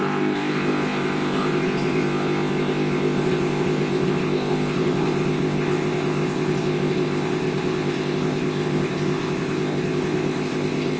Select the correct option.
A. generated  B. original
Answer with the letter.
A